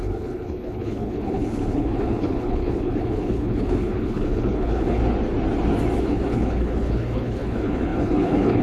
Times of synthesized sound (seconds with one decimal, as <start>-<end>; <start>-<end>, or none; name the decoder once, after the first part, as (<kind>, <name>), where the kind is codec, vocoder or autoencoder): 0.0-5.0 (codec, HILCodec); 6.0-8.6